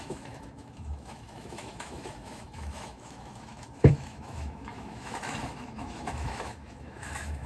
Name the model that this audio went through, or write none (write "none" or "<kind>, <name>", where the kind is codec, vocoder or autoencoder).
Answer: autoencoder, DAC-VAE